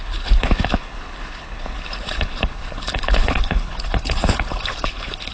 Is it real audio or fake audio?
fake